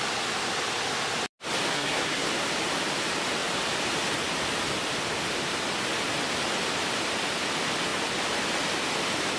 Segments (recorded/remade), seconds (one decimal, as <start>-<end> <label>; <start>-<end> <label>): 0.0-1.7 recorded; 1.7-2.3 remade; 2.3-9.4 recorded